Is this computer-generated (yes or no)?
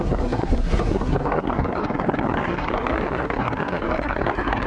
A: yes